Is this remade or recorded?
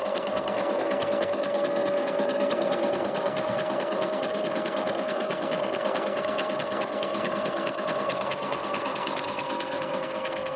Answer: remade